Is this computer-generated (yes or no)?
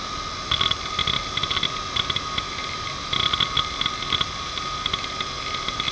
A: no